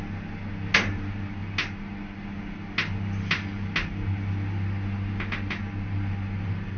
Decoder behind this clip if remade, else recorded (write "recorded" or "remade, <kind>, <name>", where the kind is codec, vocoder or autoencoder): recorded